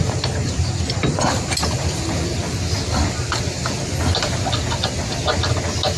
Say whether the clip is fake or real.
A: real